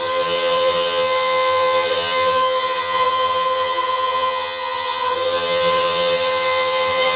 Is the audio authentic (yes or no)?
no